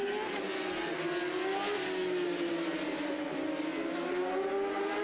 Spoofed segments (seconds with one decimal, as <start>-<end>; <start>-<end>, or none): none